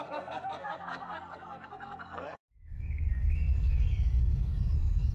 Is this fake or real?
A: fake